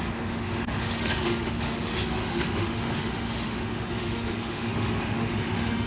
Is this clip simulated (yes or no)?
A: yes